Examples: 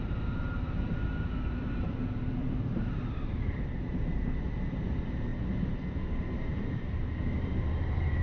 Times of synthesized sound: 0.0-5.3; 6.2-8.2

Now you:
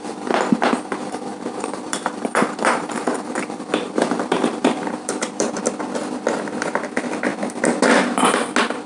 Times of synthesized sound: 1.3-5.5

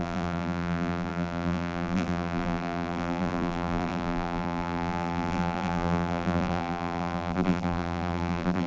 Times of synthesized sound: 0.0-8.7

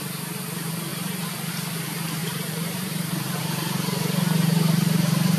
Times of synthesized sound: 0.9-1.5; 2.2-3.4